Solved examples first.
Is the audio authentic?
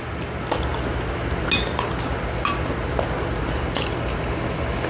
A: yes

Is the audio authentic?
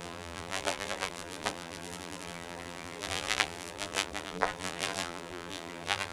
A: no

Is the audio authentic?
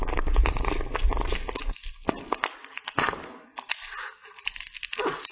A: no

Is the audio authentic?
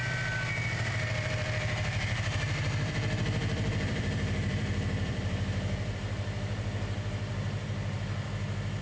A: no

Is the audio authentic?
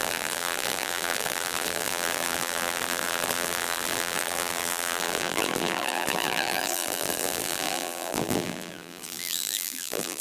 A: no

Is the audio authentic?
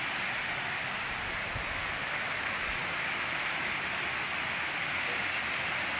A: yes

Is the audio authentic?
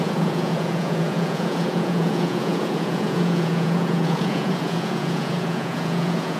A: no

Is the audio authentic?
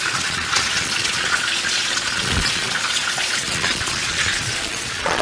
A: no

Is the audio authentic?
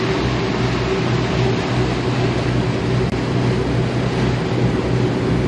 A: yes